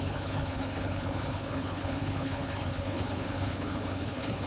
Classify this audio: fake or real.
fake